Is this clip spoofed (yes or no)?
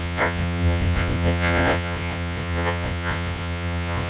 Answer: yes